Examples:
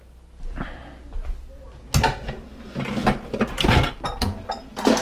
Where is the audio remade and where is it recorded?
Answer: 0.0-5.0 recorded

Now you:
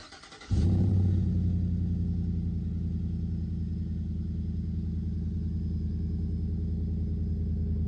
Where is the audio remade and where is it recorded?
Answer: 0.0-0.9 remade; 0.9-7.9 recorded

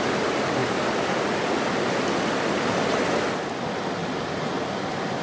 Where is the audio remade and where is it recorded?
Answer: 0.0-5.2 recorded

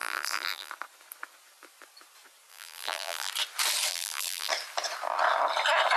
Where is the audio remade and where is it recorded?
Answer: 0.0-0.7 remade; 0.7-2.5 recorded; 2.5-3.3 remade; 3.3-3.9 recorded; 3.9-4.5 remade; 4.5-6.0 recorded

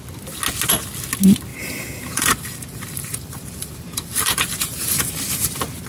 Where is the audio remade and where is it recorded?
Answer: 0.0-1.5 recorded; 1.5-5.0 remade; 5.0-5.9 recorded